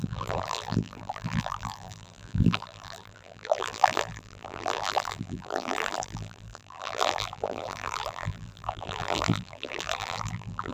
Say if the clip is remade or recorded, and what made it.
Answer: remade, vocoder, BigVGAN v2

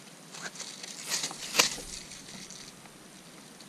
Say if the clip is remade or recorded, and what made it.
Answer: recorded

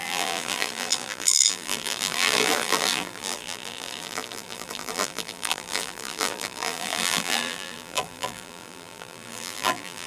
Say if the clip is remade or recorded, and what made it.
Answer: remade, vocoder, BigVGAN v2